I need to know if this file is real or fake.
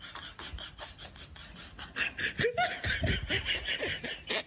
real